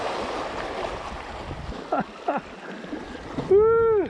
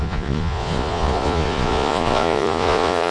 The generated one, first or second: second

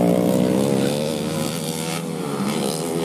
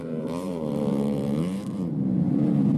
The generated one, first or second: second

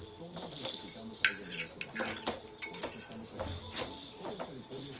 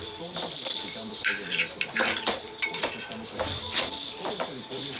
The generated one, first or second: second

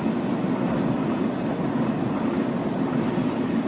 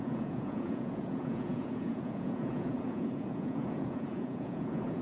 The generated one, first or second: second